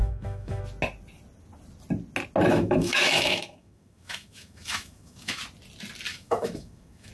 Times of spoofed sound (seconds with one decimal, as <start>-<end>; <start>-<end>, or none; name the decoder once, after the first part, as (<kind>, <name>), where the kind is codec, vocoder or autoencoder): 0.0-0.6 (autoencoder, DAC-VAE); 2.5-5.4; 6.1-7.1